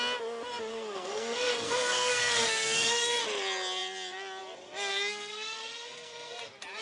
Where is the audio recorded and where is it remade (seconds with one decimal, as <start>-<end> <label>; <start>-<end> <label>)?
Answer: 0.0-0.7 recorded; 0.7-3.2 remade; 3.2-4.9 recorded; 4.9-6.3 remade; 6.3-6.8 recorded